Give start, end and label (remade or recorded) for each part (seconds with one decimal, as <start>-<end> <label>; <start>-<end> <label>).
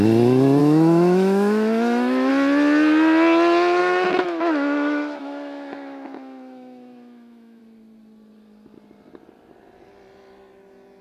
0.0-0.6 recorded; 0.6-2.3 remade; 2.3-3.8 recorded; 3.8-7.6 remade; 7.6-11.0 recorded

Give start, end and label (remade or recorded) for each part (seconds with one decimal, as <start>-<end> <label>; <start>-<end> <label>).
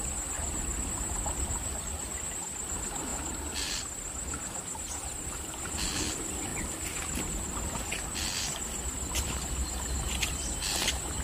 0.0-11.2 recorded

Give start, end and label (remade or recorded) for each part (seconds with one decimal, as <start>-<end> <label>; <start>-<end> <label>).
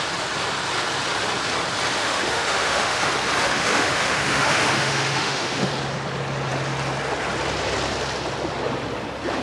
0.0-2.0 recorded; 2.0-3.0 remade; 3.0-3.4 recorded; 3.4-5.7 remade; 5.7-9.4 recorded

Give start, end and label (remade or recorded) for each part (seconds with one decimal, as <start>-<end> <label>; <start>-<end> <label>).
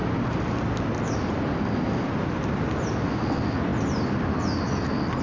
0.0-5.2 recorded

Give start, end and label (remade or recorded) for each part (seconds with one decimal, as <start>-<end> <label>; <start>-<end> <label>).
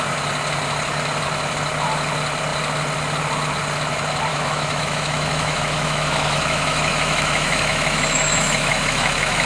0.0-4.3 recorded; 4.3-9.5 remade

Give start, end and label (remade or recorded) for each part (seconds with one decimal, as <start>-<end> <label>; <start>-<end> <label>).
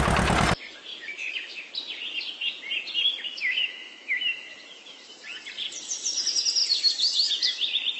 0.0-0.9 recorded; 0.9-1.7 remade; 1.7-3.2 recorded; 3.2-5.1 remade; 5.1-8.0 recorded